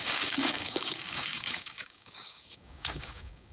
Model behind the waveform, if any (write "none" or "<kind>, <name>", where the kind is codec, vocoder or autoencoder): codec, DAC